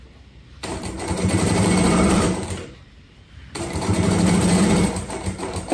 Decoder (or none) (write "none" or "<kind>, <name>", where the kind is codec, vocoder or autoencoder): vocoder, BigVGAN v2